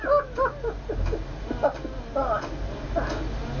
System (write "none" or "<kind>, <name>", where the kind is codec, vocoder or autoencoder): none